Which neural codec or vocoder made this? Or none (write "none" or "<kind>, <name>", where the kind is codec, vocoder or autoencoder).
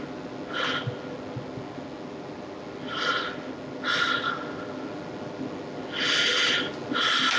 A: none